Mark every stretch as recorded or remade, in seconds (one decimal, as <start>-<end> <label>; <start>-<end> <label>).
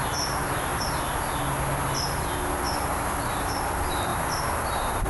0.0-0.7 remade; 0.7-2.6 recorded; 2.6-4.1 remade; 4.1-5.1 recorded